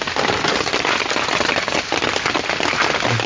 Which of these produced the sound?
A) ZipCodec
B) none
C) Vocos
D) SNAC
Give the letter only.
B